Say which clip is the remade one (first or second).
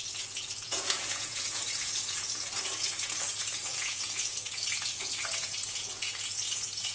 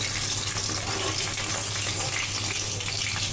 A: first